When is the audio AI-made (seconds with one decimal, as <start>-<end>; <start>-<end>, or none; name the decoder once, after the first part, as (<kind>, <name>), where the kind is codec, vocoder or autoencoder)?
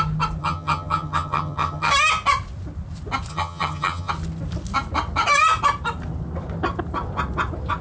0.4-1.9 (vocoder, HiFi-GAN); 3.3-4.1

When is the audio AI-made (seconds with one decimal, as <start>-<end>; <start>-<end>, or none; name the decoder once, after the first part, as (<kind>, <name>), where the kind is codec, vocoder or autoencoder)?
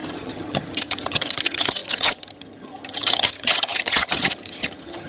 0.0-5.1 (vocoder, HiFi-GAN)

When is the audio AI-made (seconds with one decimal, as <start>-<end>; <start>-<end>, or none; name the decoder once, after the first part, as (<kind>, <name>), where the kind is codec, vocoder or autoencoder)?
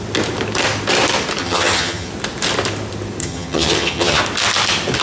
1.4-2.1 (vocoder, HiFi-GAN); 3.2-4.2